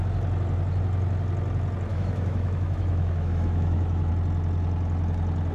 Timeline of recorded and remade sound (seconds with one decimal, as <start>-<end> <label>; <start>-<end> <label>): 0.0-1.9 recorded; 1.9-4.1 remade; 4.1-5.5 recorded